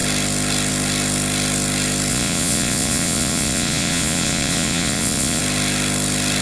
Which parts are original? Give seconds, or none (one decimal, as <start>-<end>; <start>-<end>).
0.0-2.1; 5.4-6.4